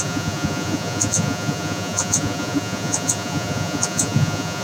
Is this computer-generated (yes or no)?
yes